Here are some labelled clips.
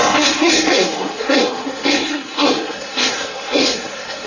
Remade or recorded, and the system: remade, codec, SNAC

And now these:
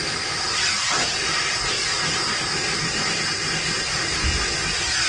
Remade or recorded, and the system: recorded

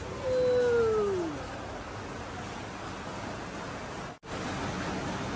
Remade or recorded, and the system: recorded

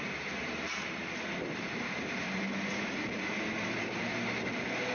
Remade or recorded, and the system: recorded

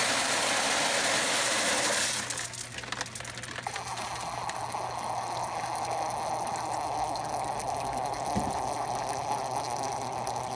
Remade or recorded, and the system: recorded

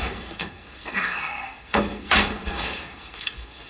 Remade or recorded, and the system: remade, codec, SNAC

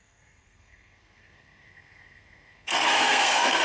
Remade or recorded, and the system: remade, codec, SNAC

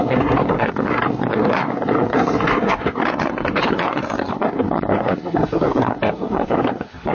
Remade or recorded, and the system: remade, codec, SNAC